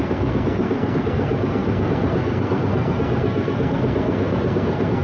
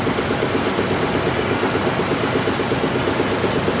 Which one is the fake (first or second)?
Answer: first